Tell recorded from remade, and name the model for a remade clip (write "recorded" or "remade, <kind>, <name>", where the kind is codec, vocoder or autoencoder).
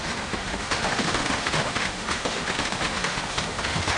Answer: remade, autoencoder, DAC-VAE